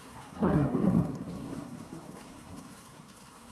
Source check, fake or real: fake